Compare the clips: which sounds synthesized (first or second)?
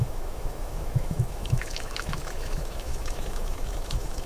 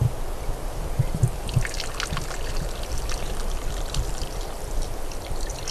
first